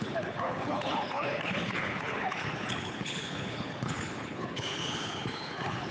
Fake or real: fake